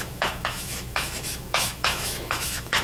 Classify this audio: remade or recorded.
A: remade